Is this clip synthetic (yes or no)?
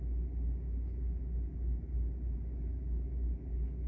no